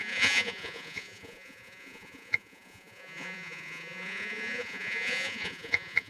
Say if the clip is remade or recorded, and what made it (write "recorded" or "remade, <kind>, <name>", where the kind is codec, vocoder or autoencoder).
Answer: remade, vocoder, Vocos